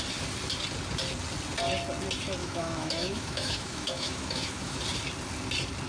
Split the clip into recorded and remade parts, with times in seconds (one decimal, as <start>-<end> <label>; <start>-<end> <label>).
0.0-2.4 recorded; 2.4-4.8 remade; 4.8-5.9 recorded